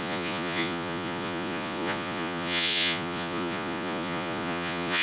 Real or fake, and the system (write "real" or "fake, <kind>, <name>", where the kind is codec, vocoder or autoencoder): fake, vocoder, Vocos